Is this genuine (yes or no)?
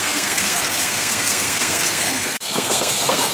no